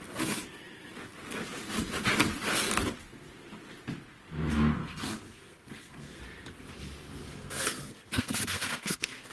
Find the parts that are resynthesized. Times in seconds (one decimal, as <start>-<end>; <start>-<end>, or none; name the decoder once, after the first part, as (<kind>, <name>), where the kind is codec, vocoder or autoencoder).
4.8-6.2 (codec, SNAC); 7.2-9.3